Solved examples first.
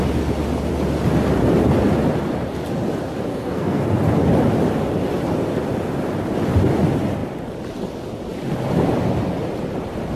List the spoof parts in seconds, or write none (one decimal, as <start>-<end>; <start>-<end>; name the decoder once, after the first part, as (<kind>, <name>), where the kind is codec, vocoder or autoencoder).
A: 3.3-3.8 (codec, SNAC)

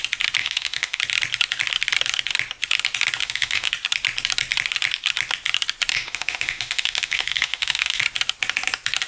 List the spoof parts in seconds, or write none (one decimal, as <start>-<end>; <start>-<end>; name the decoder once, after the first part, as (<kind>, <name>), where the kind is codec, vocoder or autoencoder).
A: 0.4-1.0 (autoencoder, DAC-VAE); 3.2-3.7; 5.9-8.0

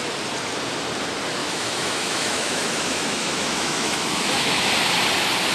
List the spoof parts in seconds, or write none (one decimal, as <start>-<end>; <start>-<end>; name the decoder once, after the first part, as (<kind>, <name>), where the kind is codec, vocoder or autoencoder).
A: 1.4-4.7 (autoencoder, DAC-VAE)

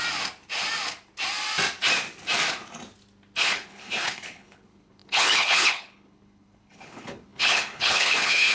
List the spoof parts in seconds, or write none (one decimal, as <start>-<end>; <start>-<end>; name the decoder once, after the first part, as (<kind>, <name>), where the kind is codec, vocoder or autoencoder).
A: 3.4-8.5 (codec, HILCodec)

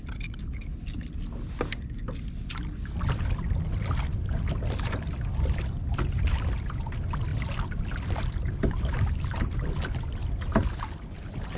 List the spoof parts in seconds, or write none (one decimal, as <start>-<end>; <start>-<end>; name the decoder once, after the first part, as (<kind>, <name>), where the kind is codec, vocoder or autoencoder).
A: none